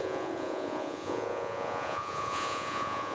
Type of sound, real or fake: fake